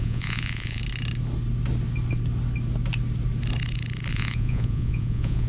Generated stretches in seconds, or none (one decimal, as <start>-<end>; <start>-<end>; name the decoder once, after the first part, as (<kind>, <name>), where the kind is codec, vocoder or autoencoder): 0.0-0.8 (vocoder, Vocos); 4.1-5.5